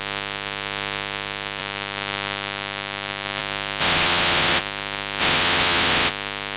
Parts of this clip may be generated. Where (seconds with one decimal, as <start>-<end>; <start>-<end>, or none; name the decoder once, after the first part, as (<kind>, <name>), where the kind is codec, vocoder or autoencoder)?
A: 3.8-4.6 (vocoder, HiFi-GAN); 5.2-6.1

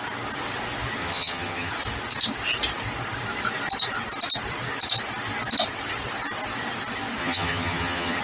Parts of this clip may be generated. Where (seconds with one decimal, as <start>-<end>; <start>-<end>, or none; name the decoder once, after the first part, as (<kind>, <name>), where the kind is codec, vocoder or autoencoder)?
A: 1.0-1.7 (vocoder, HiFi-GAN); 7.2-8.2

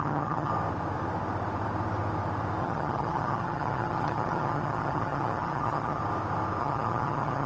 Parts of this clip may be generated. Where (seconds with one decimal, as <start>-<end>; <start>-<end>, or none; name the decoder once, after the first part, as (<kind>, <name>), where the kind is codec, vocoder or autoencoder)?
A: 0.0-0.5 (vocoder, HiFi-GAN); 2.6-6.0; 6.6-7.5

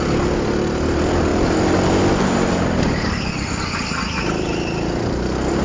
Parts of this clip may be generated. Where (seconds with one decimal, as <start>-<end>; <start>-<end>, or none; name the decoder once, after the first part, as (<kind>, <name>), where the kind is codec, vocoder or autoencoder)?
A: none

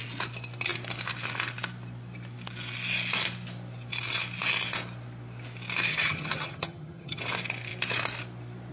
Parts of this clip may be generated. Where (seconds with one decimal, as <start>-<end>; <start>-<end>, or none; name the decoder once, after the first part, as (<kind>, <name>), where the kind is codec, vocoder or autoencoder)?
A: 5.9-7.2 (vocoder, HiFi-GAN)

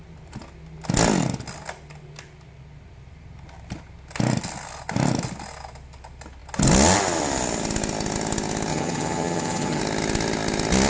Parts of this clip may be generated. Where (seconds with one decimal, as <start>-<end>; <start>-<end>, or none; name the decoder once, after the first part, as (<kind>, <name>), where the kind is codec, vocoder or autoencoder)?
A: 8.7-9.8 (vocoder, HiFi-GAN)

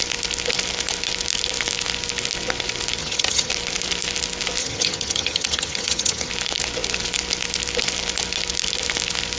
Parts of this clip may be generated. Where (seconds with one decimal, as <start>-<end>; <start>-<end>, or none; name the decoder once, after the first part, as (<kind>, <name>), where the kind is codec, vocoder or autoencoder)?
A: 3.0-3.5 (vocoder, HiFi-GAN); 4.6-6.3

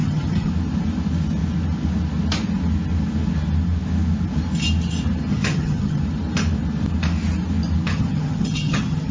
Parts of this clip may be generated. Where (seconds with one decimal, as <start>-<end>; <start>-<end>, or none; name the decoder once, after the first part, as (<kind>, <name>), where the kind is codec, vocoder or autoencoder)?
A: 0.0-0.5 (vocoder, HiFi-GAN); 5.3-6.0; 7.9-9.1